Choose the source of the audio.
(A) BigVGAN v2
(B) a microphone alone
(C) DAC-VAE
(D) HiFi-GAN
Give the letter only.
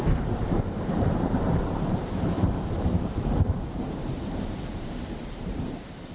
A